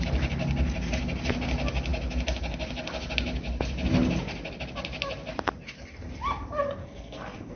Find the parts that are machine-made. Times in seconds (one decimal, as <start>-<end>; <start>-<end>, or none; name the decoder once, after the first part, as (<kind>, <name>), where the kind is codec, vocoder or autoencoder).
6.8-7.6 (codec, SNAC)